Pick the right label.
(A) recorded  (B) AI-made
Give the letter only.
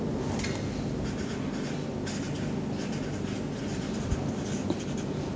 A